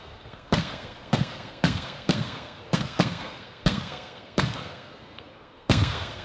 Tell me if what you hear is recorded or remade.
remade